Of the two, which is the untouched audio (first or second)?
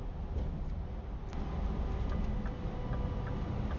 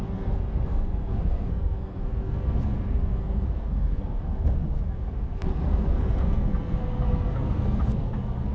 first